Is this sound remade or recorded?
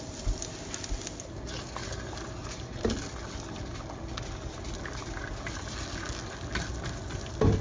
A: recorded